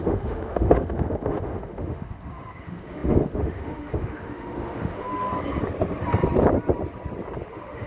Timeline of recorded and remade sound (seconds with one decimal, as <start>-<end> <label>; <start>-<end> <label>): 0.0-5.3 remade; 5.3-7.5 recorded; 7.5-7.9 remade